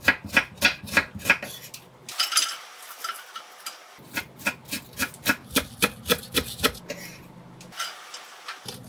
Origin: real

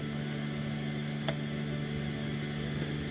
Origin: fake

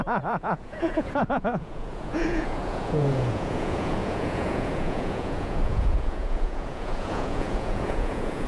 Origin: fake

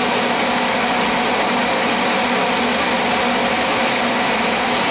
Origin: real